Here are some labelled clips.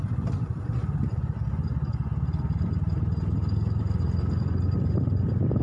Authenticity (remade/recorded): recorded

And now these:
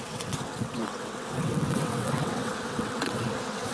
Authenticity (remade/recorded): remade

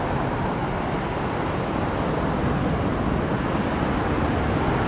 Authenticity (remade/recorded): recorded